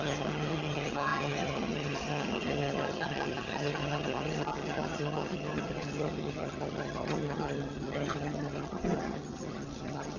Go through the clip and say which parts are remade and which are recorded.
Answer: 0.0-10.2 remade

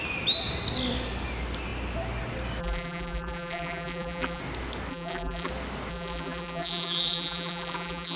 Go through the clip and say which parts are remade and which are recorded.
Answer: 0.0-2.6 recorded; 2.6-4.4 remade; 4.4-4.9 recorded; 4.9-5.5 remade; 5.5-5.9 recorded; 5.9-8.2 remade

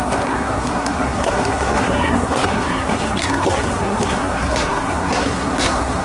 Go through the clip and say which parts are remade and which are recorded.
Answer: 0.0-6.0 remade